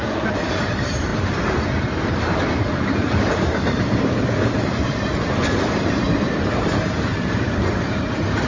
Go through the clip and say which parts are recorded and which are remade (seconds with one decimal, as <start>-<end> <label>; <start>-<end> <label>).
0.0-8.5 remade